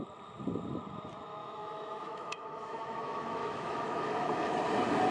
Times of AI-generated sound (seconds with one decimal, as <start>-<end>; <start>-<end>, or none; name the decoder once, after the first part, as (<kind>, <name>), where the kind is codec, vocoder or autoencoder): 1.4-4.5 (autoencoder, DAC-VAE)